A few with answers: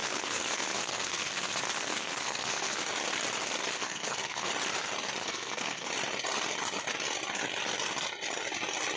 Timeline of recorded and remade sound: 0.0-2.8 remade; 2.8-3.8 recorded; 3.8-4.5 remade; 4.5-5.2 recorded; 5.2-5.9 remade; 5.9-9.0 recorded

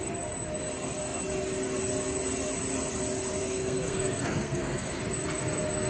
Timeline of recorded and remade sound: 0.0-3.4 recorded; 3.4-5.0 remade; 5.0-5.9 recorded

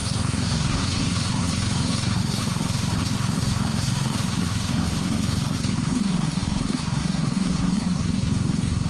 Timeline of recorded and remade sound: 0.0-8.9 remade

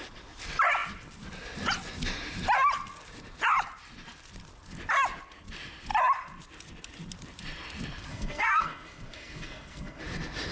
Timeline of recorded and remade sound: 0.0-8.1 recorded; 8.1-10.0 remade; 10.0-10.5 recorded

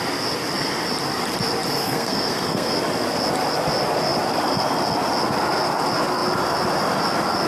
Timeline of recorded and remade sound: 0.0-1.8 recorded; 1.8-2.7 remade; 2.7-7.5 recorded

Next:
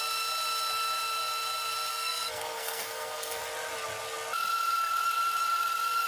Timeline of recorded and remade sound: 0.0-1.9 recorded; 1.9-3.4 remade; 3.4-6.1 recorded

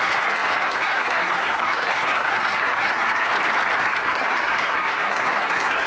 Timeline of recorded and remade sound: 0.0-3.3 remade; 3.3-3.8 recorded; 3.8-5.9 remade